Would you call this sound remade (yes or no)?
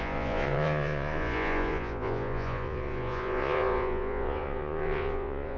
yes